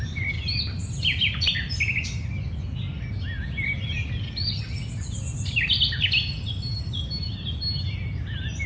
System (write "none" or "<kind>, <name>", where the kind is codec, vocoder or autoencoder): none